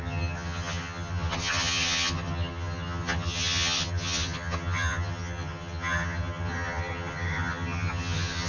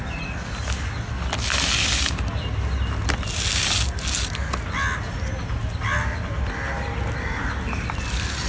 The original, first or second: second